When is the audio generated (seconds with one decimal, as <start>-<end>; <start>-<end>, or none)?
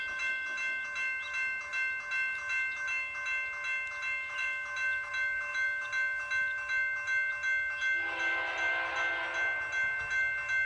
none